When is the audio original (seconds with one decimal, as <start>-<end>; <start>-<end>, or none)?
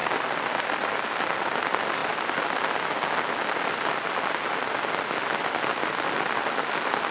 0.0-7.1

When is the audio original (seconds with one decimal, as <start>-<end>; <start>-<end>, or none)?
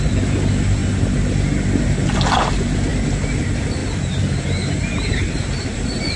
0.8-2.3; 2.9-3.4; 3.8-5.1